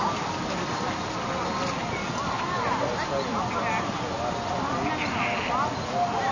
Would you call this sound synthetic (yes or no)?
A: no